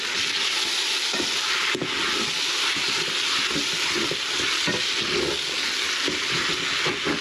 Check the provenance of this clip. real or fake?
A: real